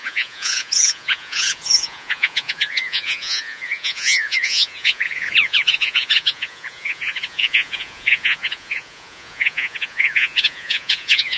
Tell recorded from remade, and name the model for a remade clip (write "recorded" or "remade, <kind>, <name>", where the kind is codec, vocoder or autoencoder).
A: remade, vocoder, Vocos